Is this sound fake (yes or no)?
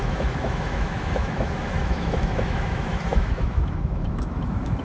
yes